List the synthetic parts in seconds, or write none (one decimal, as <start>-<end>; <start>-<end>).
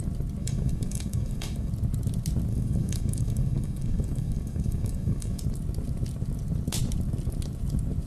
0.4-1.7; 2.5-5.4